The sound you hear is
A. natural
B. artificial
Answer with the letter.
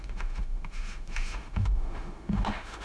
B